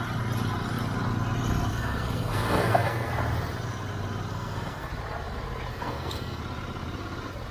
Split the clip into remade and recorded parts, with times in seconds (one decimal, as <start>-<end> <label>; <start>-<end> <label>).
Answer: 0.0-1.7 recorded; 1.7-3.1 remade; 3.1-4.3 recorded; 4.3-4.9 remade; 4.9-5.7 recorded; 5.7-6.4 remade; 6.4-7.5 recorded